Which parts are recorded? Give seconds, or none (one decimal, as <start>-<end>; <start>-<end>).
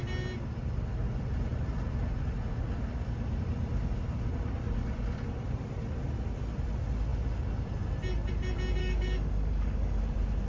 0.0-8.8; 10.0-10.5